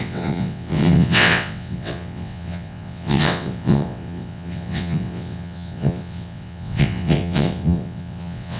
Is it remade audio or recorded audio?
remade